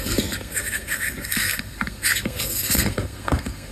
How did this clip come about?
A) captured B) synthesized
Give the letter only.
B